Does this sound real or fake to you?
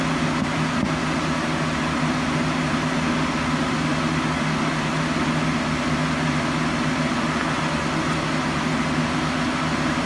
real